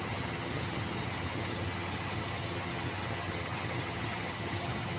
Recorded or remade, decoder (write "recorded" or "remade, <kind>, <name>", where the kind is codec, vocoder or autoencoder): remade, vocoder, HiFi-GAN